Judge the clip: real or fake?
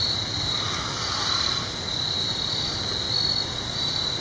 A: real